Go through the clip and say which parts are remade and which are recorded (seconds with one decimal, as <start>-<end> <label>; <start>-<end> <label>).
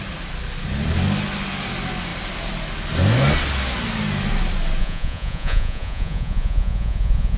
0.0-4.8 recorded; 4.8-7.4 remade